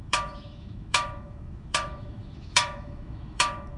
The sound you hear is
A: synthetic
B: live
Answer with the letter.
A